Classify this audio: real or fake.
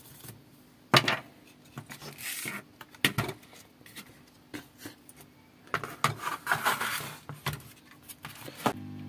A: real